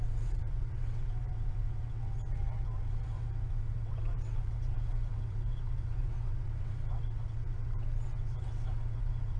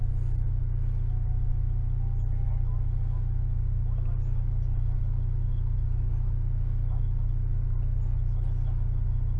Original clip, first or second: second